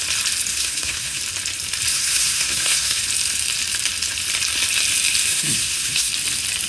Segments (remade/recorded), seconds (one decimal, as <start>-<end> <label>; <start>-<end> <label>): 0.0-0.5 recorded; 0.5-1.2 remade; 1.2-1.9 recorded; 1.9-3.0 remade; 3.0-5.3 recorded; 5.3-6.1 remade; 6.1-6.7 recorded